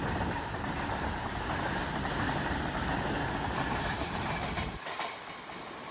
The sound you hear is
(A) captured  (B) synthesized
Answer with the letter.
A